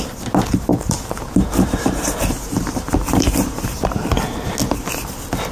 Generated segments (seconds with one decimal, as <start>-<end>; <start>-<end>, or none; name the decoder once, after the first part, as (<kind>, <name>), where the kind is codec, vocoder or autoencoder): 0.7-4.0 (vocoder, BigVGAN v2)